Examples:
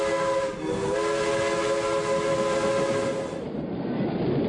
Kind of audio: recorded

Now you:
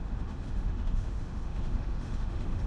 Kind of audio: remade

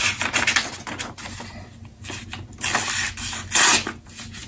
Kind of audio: recorded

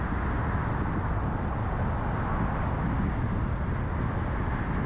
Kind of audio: recorded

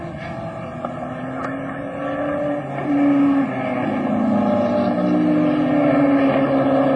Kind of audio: recorded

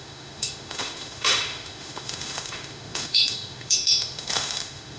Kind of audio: remade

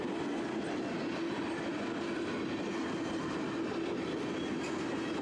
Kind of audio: recorded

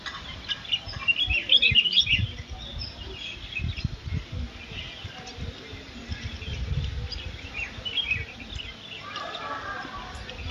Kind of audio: recorded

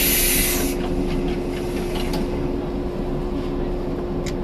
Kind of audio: recorded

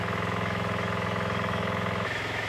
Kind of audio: remade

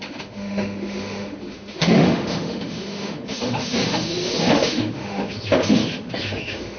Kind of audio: remade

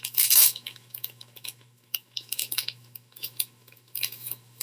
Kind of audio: remade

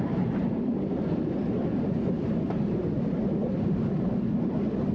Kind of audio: recorded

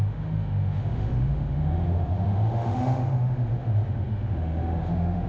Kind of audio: remade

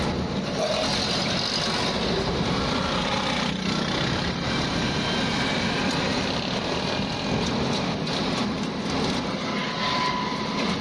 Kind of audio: recorded